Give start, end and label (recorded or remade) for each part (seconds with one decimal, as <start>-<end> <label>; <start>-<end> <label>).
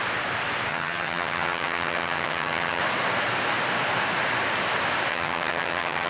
0.0-0.7 recorded; 0.7-2.8 remade; 2.8-5.1 recorded; 5.1-6.1 remade